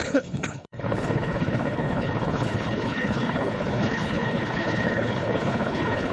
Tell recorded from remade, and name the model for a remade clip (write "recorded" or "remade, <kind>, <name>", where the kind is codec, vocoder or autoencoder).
remade, codec, HILCodec